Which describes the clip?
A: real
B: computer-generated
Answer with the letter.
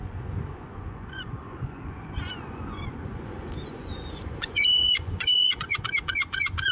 B